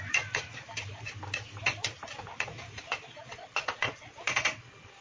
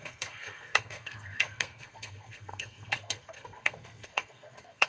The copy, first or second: second